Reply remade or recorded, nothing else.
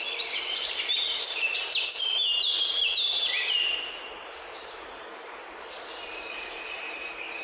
remade